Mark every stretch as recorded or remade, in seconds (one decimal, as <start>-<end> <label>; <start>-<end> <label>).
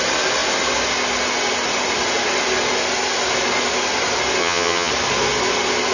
0.0-4.4 recorded; 4.4-4.9 remade; 4.9-5.9 recorded